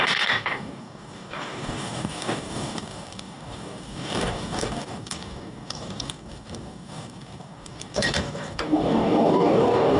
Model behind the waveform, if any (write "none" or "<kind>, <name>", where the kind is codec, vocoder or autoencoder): codec, DAC